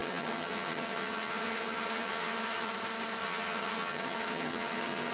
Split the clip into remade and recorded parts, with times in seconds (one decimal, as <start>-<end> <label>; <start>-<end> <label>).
0.0-2.7 remade; 2.7-3.2 recorded; 3.2-5.1 remade